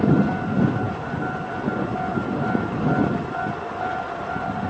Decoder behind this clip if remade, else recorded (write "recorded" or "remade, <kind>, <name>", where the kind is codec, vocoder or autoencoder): recorded